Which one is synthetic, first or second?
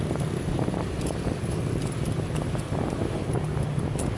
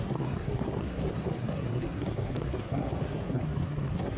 second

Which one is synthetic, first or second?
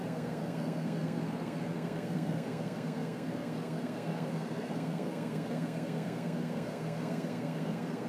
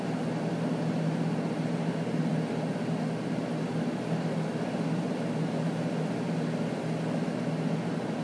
first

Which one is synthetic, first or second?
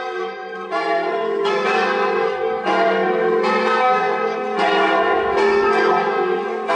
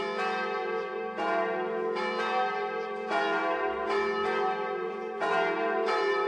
first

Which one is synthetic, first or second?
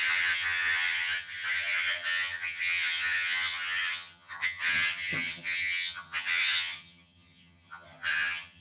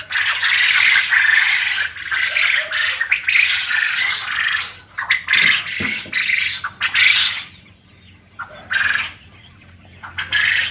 first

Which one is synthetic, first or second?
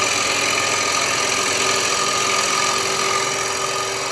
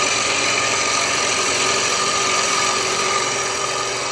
second